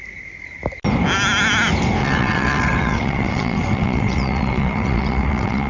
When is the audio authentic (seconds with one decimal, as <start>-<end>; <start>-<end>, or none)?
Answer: 0.0-2.0